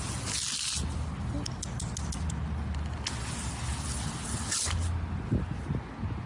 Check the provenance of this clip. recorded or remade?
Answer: recorded